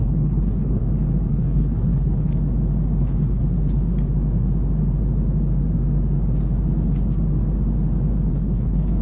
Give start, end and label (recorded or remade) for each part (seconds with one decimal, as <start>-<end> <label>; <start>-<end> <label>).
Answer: 0.0-0.8 remade; 0.8-1.3 recorded; 1.3-2.3 remade; 2.3-3.0 recorded; 3.0-3.4 remade; 3.4-8.3 recorded; 8.3-9.0 remade